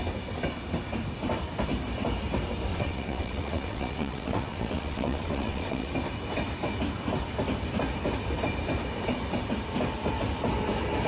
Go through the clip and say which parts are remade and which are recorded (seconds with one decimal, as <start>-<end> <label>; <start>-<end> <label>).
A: 0.0-2.7 recorded; 2.7-5.9 remade; 5.9-11.1 recorded